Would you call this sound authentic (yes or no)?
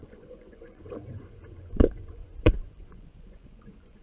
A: no